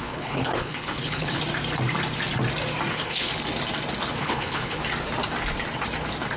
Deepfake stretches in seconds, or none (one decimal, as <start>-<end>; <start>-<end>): 0.0-1.4; 2.9-3.3; 4.2-4.8

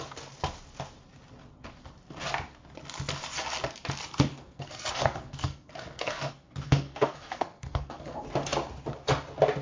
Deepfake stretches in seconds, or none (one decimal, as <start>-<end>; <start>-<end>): 4.3-8.2

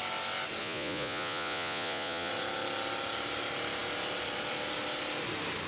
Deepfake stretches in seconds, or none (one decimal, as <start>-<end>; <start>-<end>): 0.6-2.3

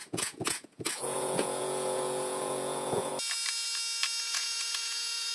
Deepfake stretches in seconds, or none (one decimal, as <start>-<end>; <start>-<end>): 0.0-3.1; 4.2-5.3

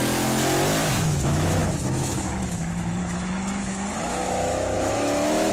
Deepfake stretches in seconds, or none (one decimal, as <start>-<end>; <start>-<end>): 0.8-5.5

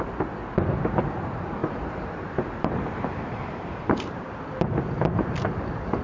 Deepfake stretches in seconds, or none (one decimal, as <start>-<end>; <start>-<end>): 1.6-4.4

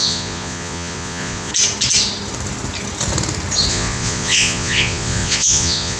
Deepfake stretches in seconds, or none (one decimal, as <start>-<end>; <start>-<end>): 0.0-1.5; 3.7-6.0